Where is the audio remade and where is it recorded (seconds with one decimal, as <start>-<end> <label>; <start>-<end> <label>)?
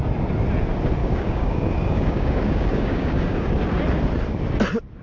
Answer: 0.0-1.0 recorded; 1.0-3.5 remade; 3.5-5.0 recorded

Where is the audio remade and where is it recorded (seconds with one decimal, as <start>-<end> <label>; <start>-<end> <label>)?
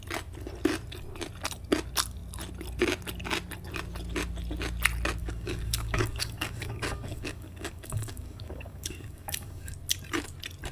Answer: 0.0-5.2 recorded; 5.2-9.7 remade; 9.7-10.7 recorded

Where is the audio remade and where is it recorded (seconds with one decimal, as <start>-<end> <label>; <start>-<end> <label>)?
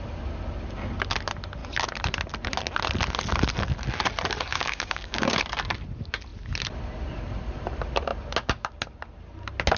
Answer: 0.0-4.5 recorded; 4.5-5.4 remade; 5.4-9.8 recorded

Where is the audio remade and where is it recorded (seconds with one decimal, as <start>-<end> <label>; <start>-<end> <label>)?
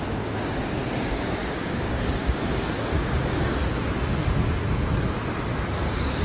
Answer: 0.0-3.6 remade; 3.6-5.7 recorded; 5.7-6.2 remade